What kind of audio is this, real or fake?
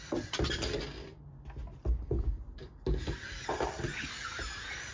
real